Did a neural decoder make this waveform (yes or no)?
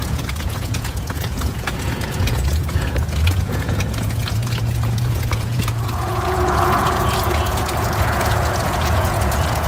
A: yes